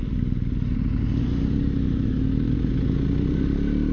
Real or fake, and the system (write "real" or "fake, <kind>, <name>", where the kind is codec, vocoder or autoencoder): real